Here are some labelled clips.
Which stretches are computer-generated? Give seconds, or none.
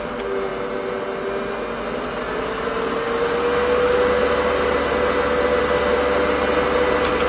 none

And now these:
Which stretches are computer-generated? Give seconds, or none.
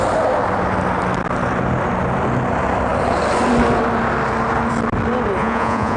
5.4-6.0 (vocoder, Vocos)